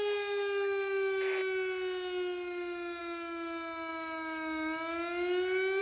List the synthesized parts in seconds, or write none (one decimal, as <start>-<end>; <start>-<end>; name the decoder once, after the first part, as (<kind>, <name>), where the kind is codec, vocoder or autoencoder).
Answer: none